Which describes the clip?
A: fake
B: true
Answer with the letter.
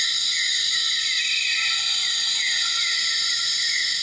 A